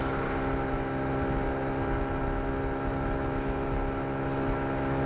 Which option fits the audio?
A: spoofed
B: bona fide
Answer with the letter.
B